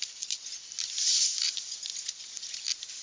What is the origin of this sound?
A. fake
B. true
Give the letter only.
B